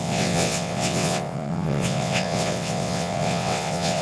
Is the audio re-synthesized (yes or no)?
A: yes